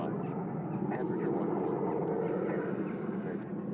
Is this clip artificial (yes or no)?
no